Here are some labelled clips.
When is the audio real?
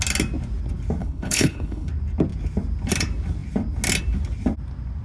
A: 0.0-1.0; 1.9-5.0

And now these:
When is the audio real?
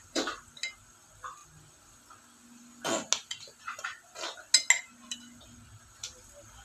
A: 0.0-6.6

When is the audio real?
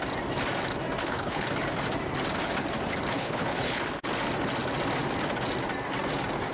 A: 0.0-1.0; 1.5-3.1; 3.8-6.5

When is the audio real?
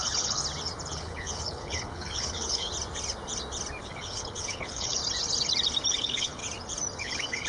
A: 0.4-0.9; 2.7-3.8; 5.0-5.9; 6.4-7.0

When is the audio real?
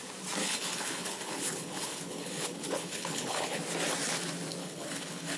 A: 0.0-0.4; 3.6-4.6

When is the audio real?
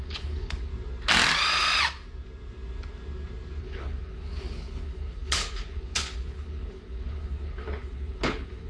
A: 0.7-3.6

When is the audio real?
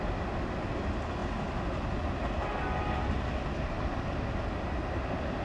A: 0.0-5.4